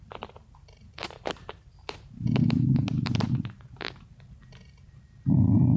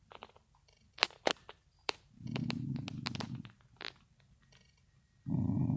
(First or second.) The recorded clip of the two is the second